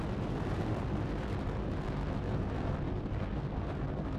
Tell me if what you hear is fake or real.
real